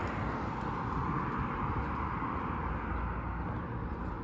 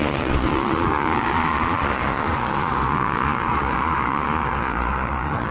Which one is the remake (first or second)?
second